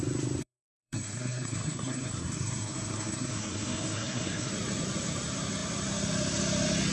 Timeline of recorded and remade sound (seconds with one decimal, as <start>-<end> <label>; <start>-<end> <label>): 0.0-0.4 recorded; 0.4-4.5 remade; 4.5-6.9 recorded

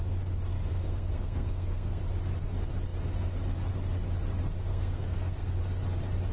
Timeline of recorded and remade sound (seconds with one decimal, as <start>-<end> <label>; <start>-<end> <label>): 0.0-0.7 recorded; 0.7-2.0 remade; 2.0-4.7 recorded; 4.7-5.6 remade; 5.6-6.3 recorded

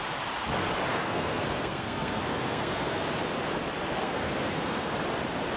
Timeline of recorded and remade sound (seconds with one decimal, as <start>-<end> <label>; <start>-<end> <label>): 0.0-0.9 recorded; 0.9-3.0 remade; 3.0-3.9 recorded; 3.9-4.9 remade; 4.9-5.6 recorded

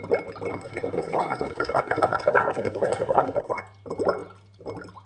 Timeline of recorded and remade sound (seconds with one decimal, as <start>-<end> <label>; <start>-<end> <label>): 0.0-0.5 recorded; 0.5-3.6 remade; 3.6-5.1 recorded

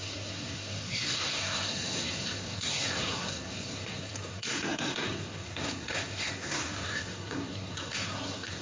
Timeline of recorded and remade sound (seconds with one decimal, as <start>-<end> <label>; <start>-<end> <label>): 0.0-8.6 remade

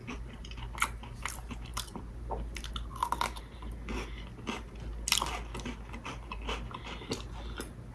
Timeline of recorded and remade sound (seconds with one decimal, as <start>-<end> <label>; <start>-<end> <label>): 0.0-7.9 recorded

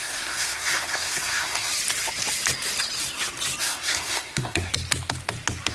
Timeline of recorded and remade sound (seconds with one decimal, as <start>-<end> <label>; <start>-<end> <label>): 0.0-1.7 remade; 1.7-3.6 recorded; 3.6-4.7 remade; 4.7-5.7 recorded